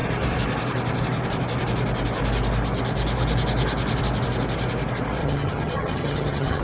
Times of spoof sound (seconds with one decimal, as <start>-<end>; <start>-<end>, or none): 5.2-6.6